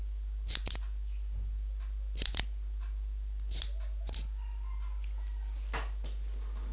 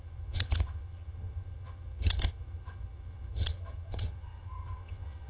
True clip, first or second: first